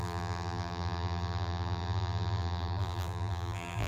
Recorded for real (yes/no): no